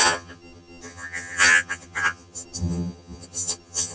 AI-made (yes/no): yes